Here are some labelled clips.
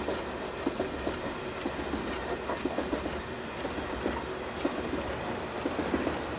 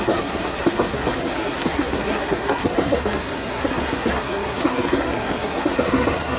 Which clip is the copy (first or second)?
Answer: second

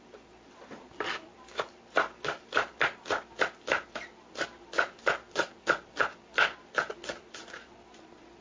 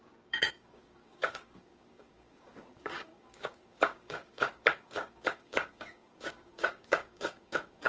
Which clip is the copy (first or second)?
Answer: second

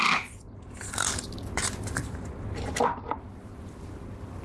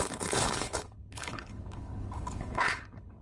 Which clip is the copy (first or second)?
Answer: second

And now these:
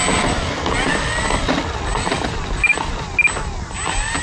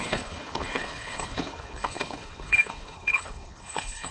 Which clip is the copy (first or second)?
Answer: second